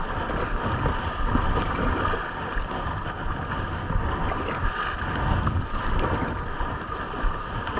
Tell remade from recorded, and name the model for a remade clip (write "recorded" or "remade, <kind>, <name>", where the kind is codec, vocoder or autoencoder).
recorded